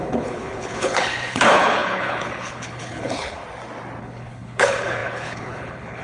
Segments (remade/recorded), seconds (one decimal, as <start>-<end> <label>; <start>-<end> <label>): 0.0-3.4 remade; 3.4-4.0 recorded; 4.0-6.0 remade